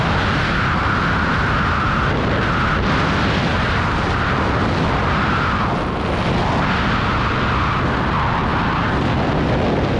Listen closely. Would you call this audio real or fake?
real